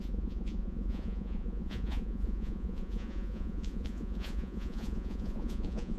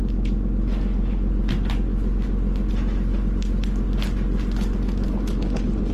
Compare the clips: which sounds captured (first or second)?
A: second